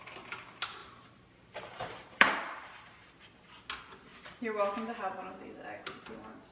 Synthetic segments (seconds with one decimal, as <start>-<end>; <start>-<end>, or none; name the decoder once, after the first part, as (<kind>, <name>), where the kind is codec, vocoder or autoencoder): 0.8-3.2 (vocoder, BigVGAN v2)